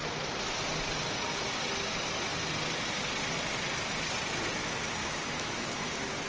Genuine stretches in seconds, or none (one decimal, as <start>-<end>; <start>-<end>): 0.0-5.0; 5.7-6.3